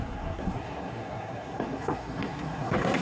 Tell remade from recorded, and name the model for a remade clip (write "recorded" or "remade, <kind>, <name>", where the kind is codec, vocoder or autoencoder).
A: remade, codec, SNAC